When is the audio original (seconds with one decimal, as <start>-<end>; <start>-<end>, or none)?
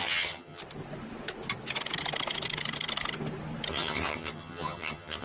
0.6-3.7